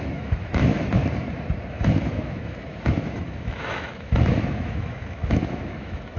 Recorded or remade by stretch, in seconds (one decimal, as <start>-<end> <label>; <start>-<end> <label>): 0.0-1.0 remade; 1.0-1.7 recorded; 1.7-6.2 remade